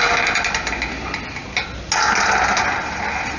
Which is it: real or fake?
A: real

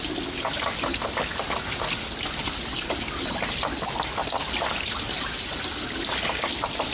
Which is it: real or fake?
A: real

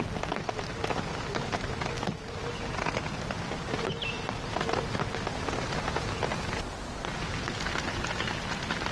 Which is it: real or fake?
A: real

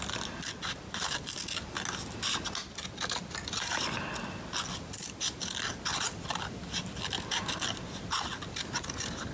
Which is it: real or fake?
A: real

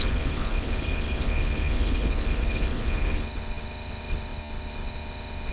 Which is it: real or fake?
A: fake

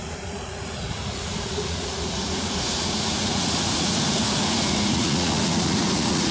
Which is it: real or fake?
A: fake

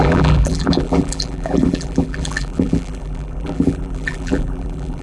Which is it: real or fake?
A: fake